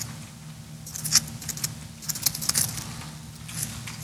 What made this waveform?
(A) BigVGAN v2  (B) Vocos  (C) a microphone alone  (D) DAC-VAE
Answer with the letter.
C